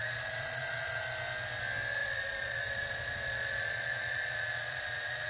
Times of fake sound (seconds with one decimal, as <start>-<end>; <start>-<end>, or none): 0.0-1.0; 2.0-5.3